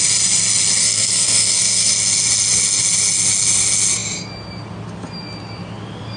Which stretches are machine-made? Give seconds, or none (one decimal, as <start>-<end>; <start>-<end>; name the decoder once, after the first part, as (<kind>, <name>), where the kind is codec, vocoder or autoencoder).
0.8-1.9 (codec, SNAC)